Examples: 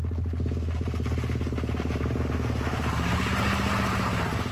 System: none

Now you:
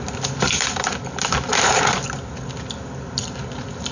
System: none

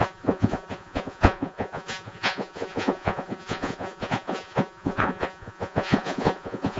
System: vocoder, Vocos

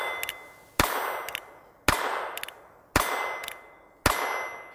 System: none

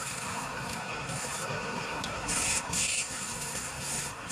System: codec, SNAC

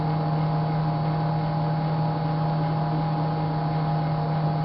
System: none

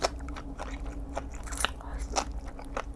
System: none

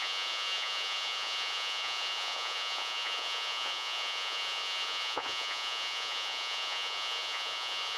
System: vocoder, Vocos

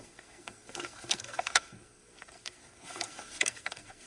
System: codec, SNAC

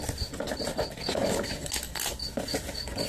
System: none